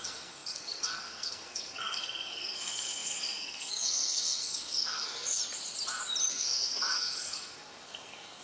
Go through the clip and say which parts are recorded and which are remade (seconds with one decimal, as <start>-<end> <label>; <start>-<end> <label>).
0.0-5.4 remade; 5.4-6.3 recorded; 6.3-8.4 remade